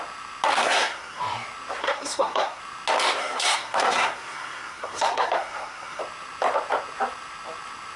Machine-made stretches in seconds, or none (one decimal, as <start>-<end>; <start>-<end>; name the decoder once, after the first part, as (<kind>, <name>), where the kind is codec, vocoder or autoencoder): 0.5-1.2 (codec, SNAC); 1.8-2.6; 3.2-6.0